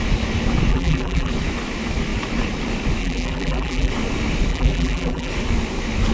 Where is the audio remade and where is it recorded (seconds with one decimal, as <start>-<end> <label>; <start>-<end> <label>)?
0.0-0.7 recorded; 0.7-1.3 remade; 1.3-3.0 recorded; 3.0-3.9 remade; 3.9-4.5 recorded; 4.5-5.3 remade; 5.3-6.1 recorded